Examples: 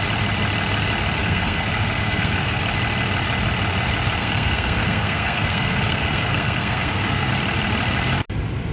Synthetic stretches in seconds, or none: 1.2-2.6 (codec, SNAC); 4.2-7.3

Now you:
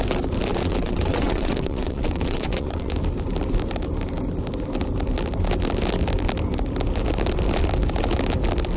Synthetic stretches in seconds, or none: 0.5-2.9 (vocoder, WaveNeXt)